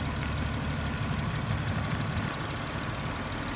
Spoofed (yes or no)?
no